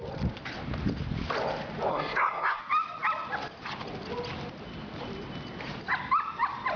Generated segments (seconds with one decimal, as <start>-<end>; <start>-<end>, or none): 1.9-2.6